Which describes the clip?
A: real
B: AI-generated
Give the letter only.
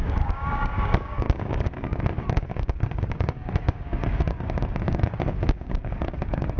B